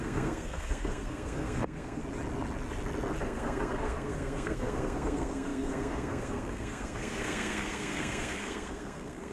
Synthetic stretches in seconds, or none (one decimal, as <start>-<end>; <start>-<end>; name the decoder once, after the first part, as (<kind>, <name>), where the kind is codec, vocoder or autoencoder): 0.0-2.0 (codec, SNAC); 3.2-9.3